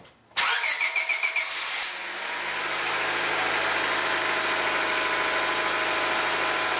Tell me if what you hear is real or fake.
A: real